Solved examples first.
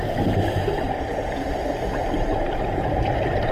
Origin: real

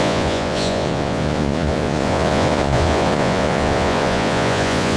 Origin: fake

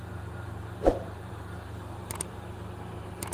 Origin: fake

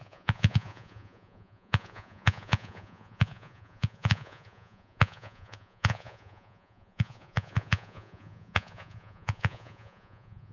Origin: fake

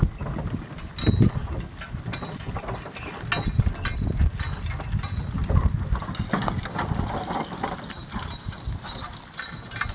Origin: real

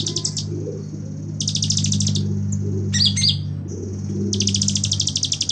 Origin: real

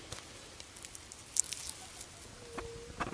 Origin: real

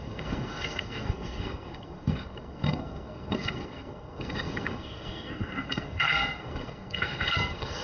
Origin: fake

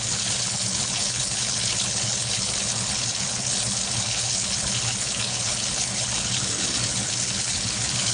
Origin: fake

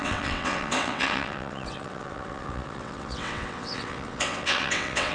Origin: fake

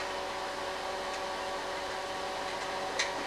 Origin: real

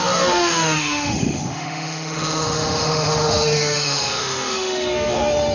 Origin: fake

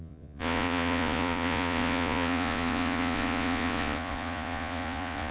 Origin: fake